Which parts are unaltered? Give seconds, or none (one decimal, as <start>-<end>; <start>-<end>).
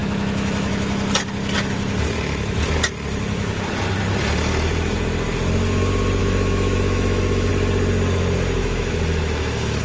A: 0.7-6.2; 7.5-8.6